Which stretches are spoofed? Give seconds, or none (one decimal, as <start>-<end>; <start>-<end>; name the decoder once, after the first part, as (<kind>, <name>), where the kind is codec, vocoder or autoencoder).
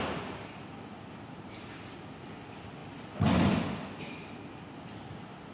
none